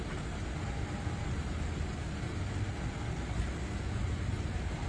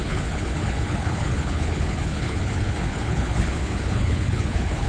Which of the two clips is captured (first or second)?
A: first